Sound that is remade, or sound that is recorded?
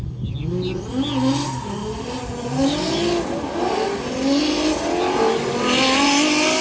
recorded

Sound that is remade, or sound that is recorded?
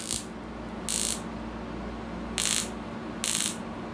recorded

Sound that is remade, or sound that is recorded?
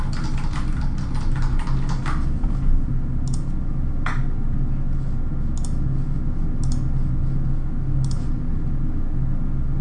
recorded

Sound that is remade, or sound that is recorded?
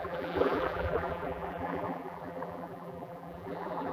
remade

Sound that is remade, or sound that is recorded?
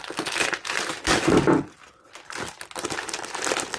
recorded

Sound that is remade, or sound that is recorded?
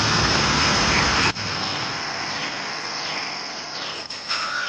remade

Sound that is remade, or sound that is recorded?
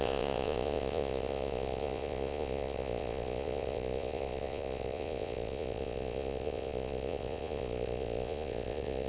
remade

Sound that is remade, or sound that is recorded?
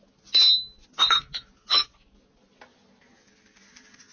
recorded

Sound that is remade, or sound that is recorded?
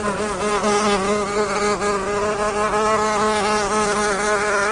recorded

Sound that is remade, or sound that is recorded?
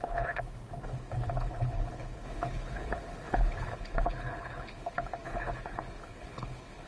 remade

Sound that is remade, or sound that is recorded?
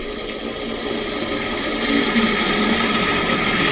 recorded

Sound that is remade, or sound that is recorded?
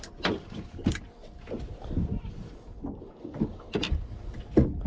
recorded